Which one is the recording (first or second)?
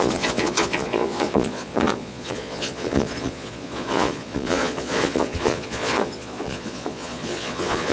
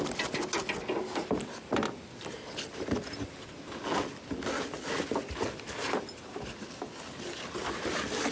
second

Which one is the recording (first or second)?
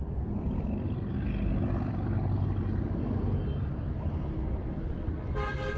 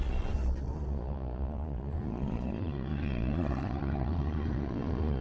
first